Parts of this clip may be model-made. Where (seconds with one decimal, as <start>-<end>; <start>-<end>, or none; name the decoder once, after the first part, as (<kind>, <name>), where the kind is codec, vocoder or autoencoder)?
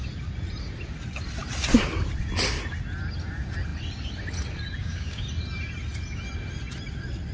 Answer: 4.8-5.3 (codec, DAC)